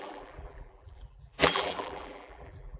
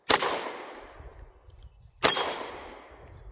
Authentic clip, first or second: second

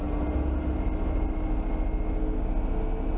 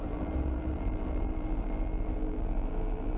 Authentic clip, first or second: first